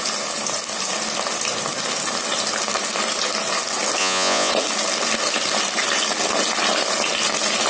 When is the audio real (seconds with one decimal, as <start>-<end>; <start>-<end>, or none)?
0.0-4.0; 4.5-7.7